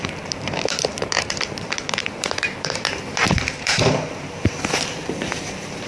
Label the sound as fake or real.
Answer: fake